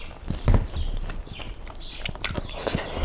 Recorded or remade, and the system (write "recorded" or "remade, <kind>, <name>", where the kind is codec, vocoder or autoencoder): recorded